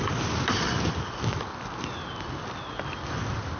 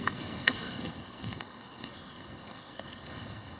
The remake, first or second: second